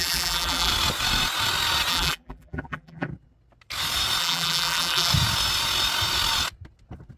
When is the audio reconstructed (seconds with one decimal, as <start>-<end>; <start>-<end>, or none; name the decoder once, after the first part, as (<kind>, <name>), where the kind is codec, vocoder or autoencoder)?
0.0-0.7 (vocoder, BigVGAN v2); 1.9-3.1; 4.2-5.1